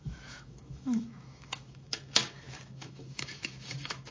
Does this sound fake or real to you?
fake